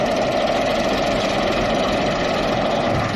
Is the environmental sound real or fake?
fake